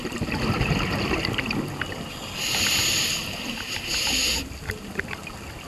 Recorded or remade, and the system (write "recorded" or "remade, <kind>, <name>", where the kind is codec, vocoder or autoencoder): recorded